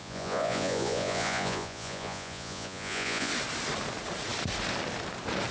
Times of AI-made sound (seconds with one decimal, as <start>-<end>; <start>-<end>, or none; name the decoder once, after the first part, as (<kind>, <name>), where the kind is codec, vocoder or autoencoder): 0.0-3.3 (vocoder, Vocos)